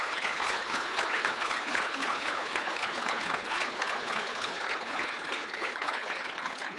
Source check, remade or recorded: remade